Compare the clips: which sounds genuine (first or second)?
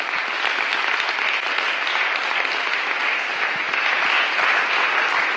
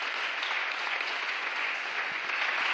first